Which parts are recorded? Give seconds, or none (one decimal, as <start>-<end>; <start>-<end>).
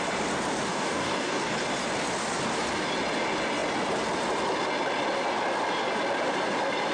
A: 0.0-0.7; 1.4-6.9